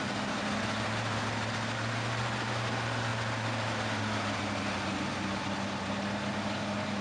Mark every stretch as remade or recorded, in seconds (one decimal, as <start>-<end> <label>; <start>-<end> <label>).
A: 0.0-7.0 recorded

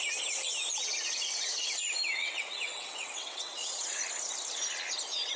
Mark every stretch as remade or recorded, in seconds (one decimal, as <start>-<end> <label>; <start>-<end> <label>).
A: 0.0-2.2 recorded; 2.2-4.0 remade; 4.0-5.4 recorded

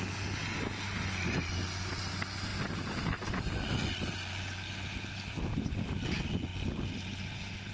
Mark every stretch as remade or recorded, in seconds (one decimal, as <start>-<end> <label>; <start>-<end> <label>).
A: 0.0-7.7 recorded

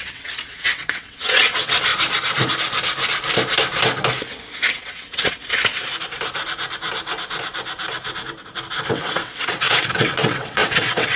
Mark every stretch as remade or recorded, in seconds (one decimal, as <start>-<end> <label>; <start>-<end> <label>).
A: 0.0-1.9 remade; 1.9-4.7 recorded; 4.7-5.7 remade; 5.7-8.9 recorded; 8.9-11.2 remade

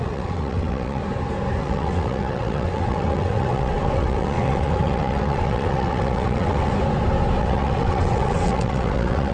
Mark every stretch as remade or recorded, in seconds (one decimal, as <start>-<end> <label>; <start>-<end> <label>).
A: 0.0-1.0 remade; 1.0-1.6 recorded; 1.6-6.7 remade; 6.7-7.4 recorded; 7.4-9.3 remade

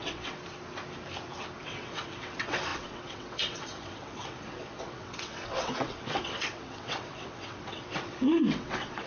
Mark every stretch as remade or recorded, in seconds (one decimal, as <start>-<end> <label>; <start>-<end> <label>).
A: 0.0-0.4 remade; 0.4-1.6 recorded; 1.6-9.1 remade

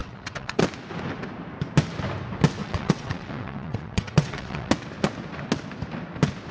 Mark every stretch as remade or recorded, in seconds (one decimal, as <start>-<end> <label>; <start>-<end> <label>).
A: 0.0-0.6 remade; 0.6-2.6 recorded; 2.6-4.7 remade; 4.7-6.5 recorded